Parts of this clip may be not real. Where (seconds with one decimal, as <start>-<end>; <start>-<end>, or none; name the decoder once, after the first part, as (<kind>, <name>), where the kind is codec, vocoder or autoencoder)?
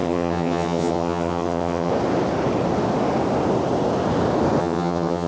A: 0.0-1.9 (vocoder, HiFi-GAN); 4.6-5.3